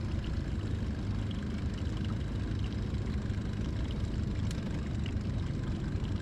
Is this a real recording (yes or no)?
yes